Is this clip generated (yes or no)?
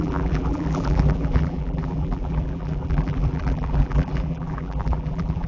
yes